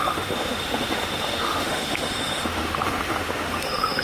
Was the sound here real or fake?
fake